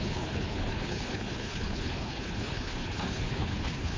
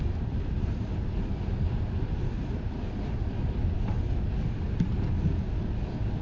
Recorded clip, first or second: second